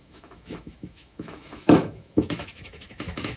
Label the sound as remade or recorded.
remade